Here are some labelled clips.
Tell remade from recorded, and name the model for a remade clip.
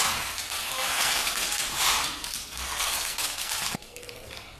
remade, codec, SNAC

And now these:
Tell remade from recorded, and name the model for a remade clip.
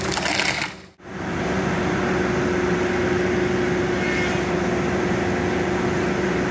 recorded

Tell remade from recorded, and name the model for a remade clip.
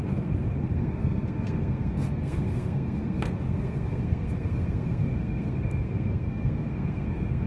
remade, codec, SNAC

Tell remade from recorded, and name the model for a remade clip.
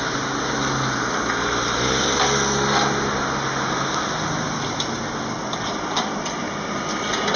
recorded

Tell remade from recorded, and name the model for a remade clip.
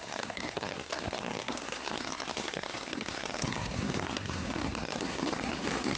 remade, codec, SNAC